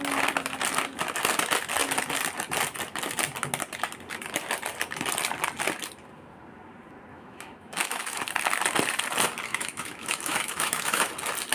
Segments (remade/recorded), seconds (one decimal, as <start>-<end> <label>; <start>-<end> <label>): 0.0-7.1 recorded; 7.1-8.2 remade; 8.2-9.5 recorded; 9.5-11.1 remade; 11.1-11.5 recorded